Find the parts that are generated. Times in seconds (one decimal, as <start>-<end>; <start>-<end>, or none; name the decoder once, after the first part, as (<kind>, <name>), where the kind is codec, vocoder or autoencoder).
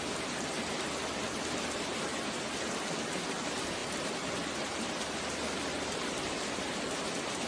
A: none